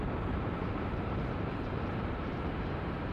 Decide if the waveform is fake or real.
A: fake